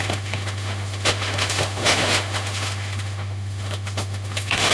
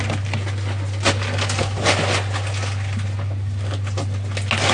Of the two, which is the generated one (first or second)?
first